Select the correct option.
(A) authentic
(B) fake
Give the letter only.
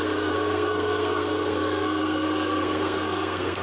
B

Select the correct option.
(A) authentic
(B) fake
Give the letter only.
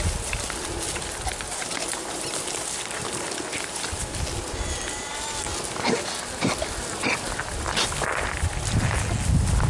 A